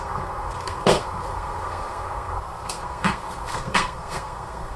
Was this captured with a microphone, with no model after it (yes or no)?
no